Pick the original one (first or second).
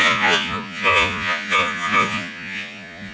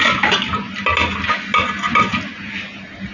second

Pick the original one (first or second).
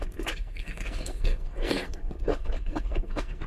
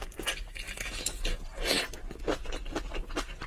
second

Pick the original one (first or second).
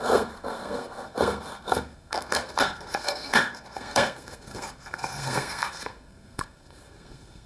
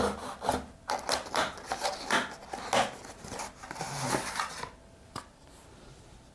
second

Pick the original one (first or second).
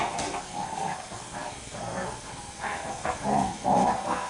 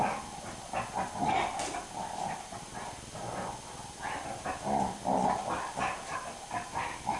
second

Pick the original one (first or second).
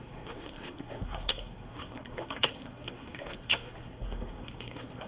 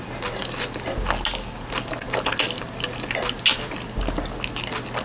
second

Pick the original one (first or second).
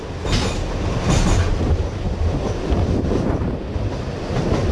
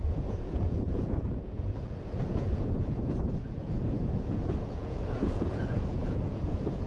first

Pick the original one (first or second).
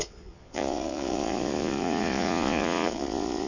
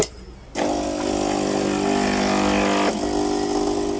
second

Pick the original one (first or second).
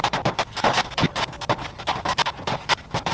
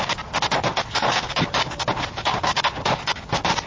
second